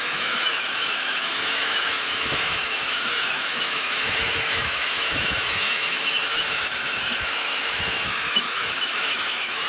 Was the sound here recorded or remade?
remade